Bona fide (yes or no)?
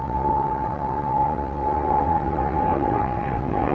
no